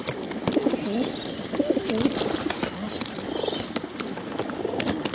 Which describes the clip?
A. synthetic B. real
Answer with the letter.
B